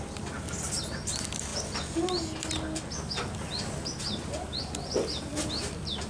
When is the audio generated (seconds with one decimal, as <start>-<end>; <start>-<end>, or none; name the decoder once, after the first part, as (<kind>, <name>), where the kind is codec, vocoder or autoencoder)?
none